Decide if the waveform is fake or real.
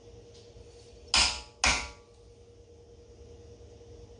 real